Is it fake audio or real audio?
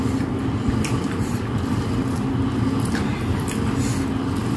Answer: real